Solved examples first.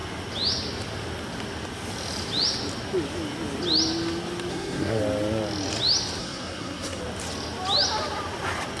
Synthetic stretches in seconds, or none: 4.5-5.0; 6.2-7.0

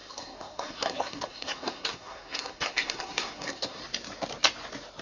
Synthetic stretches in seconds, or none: 0.0-3.8

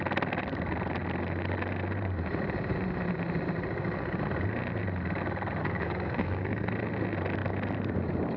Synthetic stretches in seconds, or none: 5.6-6.7

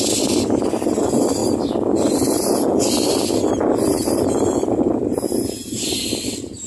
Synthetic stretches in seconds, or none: none

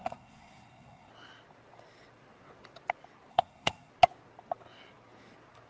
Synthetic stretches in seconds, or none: 0.0-1.1; 3.3-3.9

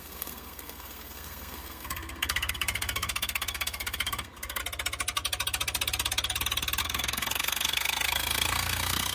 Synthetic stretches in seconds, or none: 0.0-4.6; 6.8-9.1

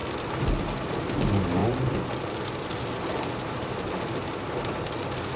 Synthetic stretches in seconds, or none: none

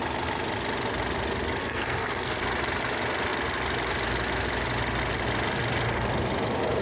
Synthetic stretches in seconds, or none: 1.6-2.4